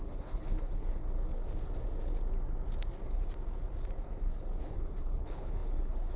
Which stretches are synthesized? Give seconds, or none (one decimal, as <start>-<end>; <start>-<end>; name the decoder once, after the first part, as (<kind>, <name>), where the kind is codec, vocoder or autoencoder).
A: 0.0-1.0 (codec, HILCodec); 4.6-6.2